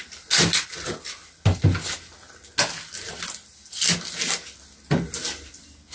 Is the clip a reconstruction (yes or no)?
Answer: no